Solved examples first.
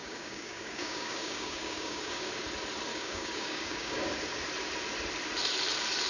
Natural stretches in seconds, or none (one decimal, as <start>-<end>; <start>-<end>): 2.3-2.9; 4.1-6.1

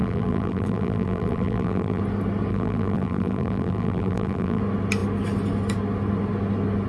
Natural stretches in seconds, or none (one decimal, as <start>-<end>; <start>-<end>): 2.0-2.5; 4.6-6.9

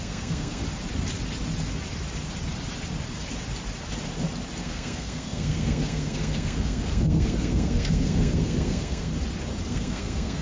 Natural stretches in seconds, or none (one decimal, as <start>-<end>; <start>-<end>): 0.6-4.6; 9.1-9.7